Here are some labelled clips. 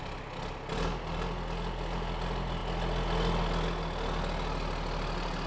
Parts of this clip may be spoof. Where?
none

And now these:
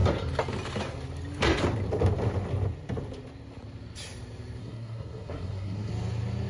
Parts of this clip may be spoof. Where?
4.6-5.9 (codec, SNAC)